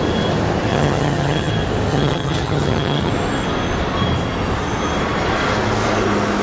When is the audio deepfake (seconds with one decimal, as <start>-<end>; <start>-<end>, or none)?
0.7-1.5; 1.9-3.1